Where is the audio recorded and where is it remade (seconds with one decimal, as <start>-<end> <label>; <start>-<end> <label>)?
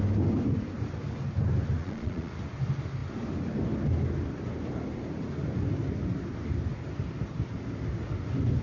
0.0-1.8 recorded; 1.8-2.3 remade; 2.3-8.6 recorded